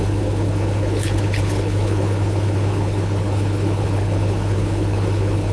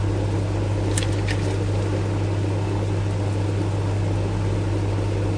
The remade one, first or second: first